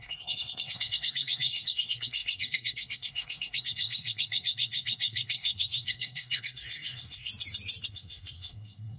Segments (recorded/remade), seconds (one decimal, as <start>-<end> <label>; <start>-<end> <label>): 0.0-7.3 remade; 7.3-7.9 recorded; 7.9-9.0 remade